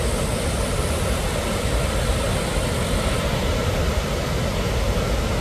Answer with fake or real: real